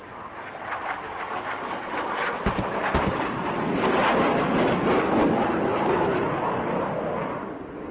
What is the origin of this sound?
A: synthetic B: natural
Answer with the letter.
B